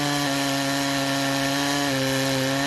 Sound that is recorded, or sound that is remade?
recorded